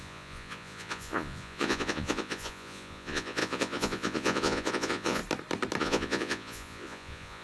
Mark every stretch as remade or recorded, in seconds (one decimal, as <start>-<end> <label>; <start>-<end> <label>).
0.0-5.2 remade; 5.2-5.8 recorded; 5.8-7.4 remade